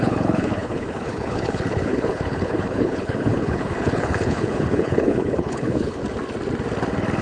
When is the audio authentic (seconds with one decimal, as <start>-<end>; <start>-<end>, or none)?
6.0-7.2